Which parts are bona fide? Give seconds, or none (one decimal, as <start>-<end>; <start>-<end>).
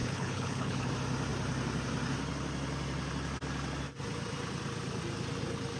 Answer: 0.9-5.8